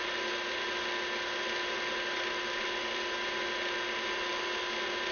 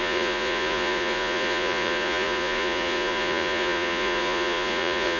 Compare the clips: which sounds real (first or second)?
first